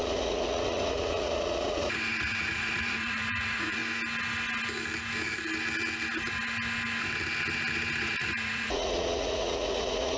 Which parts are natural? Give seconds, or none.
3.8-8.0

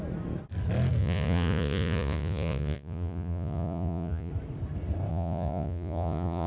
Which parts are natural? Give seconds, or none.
0.0-1.0; 4.3-5.1

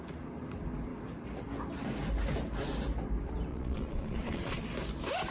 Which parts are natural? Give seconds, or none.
0.0-3.5; 4.6-5.3